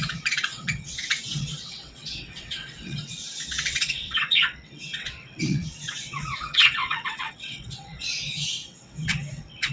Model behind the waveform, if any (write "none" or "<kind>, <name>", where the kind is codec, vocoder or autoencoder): vocoder, WaveNeXt